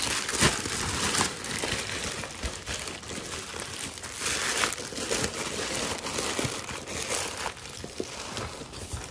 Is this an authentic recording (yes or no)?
yes